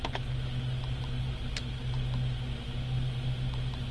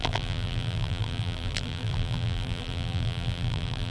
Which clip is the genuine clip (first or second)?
first